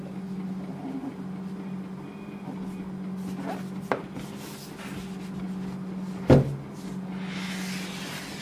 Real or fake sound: real